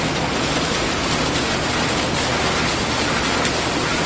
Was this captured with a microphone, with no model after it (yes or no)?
yes